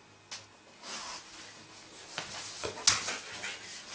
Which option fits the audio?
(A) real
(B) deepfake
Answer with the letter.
A